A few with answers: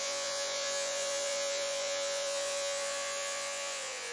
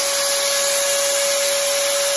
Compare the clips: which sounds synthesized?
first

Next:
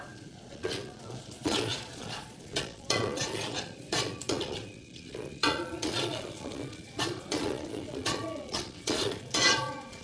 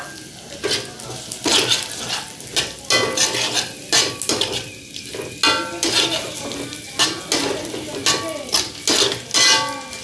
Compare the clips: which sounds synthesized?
first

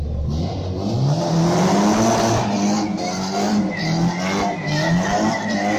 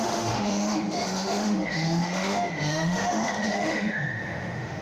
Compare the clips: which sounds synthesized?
second